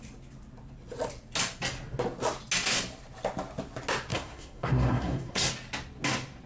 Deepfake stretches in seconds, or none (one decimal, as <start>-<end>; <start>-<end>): 4.1-5.5